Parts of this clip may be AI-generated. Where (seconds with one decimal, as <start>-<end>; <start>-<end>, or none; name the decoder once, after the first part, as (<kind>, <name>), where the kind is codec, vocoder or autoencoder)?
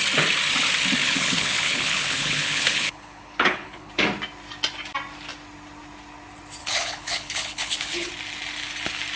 1.0-3.9 (codec, HILCodec); 6.6-8.1